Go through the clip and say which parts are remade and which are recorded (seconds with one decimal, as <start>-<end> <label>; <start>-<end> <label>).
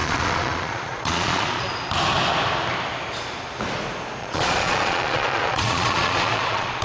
0.0-1.7 remade; 1.7-4.2 recorded; 4.2-6.8 remade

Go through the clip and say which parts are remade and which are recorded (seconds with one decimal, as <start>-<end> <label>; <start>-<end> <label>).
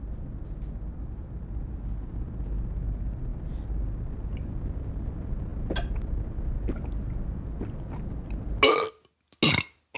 0.0-10.0 recorded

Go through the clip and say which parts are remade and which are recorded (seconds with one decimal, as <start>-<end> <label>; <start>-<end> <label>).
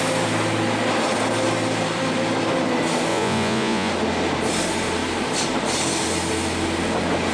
0.0-3.1 recorded; 3.1-3.9 remade; 3.9-7.3 recorded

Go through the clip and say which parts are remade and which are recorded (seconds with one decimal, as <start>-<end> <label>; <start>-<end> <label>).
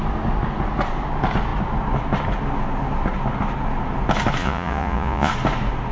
0.0-4.4 recorded; 4.4-5.3 remade; 5.3-5.9 recorded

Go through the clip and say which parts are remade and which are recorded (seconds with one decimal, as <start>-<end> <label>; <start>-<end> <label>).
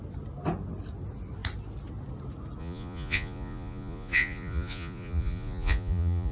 0.0-2.6 recorded; 2.6-6.3 remade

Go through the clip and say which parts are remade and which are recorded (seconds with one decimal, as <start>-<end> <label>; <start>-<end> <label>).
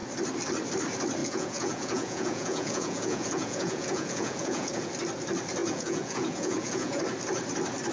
0.0-1.2 recorded; 1.2-4.9 remade; 4.9-5.6 recorded; 5.6-7.0 remade; 7.0-7.9 recorded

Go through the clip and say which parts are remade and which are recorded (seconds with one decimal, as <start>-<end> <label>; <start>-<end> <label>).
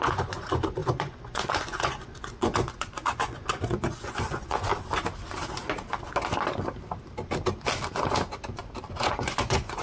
0.0-4.7 remade; 4.7-8.9 recorded; 8.9-9.8 remade